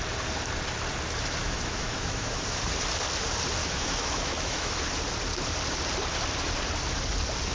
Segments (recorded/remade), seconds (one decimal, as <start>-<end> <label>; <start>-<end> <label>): 0.0-1.4 recorded; 1.4-2.6 remade; 2.6-3.6 recorded; 3.6-4.7 remade; 4.7-7.5 recorded